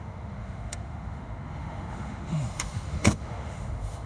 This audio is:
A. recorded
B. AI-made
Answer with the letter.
B